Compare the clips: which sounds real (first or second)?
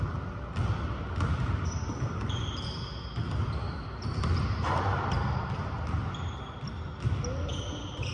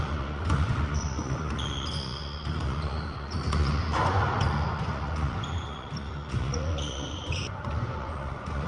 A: first